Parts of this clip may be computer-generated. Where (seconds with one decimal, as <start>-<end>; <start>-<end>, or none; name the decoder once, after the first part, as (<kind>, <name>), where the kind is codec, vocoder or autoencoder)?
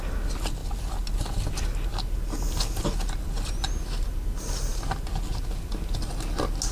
none